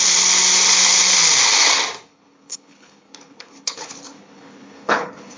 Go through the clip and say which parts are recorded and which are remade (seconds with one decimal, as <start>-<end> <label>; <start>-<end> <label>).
0.0-2.1 recorded; 2.1-5.4 remade